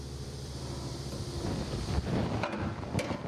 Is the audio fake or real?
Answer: fake